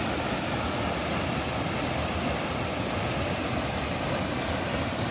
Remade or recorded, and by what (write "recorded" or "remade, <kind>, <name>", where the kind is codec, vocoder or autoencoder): recorded